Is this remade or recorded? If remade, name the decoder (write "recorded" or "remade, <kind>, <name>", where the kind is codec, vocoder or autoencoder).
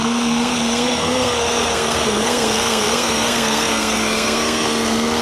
remade, codec, SNAC